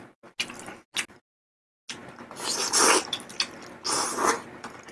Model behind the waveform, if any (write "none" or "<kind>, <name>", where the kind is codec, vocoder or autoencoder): none